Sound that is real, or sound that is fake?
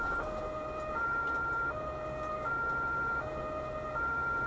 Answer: real